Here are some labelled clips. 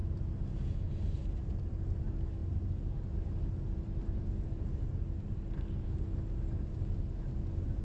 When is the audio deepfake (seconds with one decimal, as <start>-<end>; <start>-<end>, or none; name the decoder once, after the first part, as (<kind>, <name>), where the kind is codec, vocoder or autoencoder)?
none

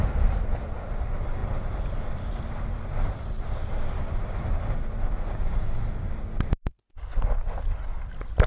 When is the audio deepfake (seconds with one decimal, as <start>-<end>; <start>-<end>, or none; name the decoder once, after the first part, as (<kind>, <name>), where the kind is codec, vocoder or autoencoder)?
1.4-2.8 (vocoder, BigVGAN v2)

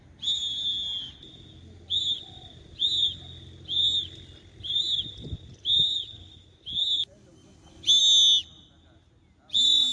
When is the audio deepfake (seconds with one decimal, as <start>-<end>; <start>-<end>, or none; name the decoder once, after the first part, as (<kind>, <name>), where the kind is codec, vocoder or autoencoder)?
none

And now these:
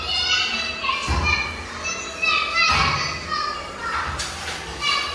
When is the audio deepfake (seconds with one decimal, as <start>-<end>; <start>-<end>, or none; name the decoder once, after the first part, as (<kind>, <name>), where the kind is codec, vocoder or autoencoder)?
3.5-4.4 (vocoder, BigVGAN v2)